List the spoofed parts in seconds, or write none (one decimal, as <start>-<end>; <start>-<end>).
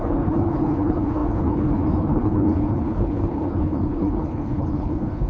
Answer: 0.0-5.3